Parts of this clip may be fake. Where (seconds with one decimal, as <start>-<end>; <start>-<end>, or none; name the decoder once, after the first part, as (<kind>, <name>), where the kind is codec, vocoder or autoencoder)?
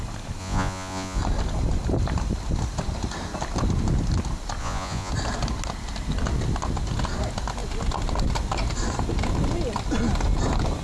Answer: 0.4-1.2 (vocoder, Vocos); 4.6-5.1